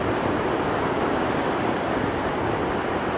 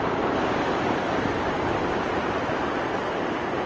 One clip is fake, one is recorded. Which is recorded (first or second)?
first